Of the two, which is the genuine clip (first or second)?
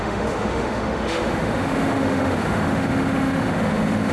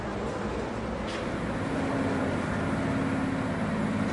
second